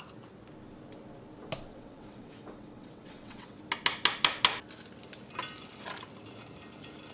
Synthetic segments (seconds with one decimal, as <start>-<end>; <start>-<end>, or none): 1.7-3.6

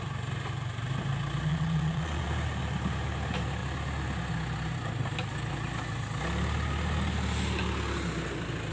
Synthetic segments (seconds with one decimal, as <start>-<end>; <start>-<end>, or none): 1.5-2.3

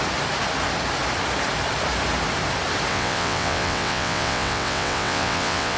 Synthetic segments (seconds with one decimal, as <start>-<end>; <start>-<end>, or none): 2.9-5.8

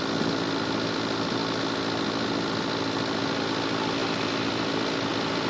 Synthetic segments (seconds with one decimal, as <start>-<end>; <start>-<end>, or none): none

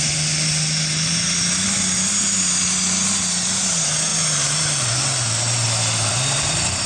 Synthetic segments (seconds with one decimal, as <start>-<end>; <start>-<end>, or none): none

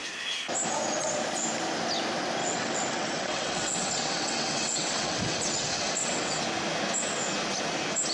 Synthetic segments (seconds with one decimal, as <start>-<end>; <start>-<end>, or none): 2.4-6.4

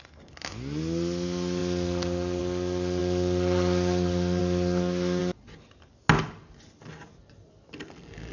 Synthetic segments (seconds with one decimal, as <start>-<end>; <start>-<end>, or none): none

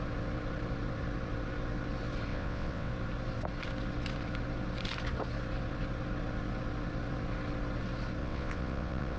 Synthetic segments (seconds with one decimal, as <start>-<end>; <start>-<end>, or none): 2.3-2.9; 8.2-9.2